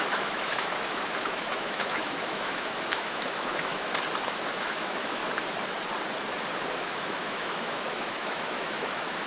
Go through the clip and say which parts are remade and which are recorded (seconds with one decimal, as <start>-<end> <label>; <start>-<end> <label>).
0.0-3.9 remade; 3.9-4.6 recorded; 4.6-5.2 remade; 5.2-6.7 recorded; 6.7-9.3 remade